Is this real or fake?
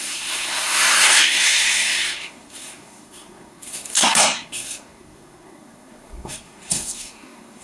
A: fake